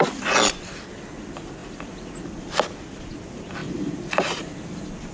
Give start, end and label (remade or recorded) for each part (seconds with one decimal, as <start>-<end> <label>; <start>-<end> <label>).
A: 0.0-5.1 recorded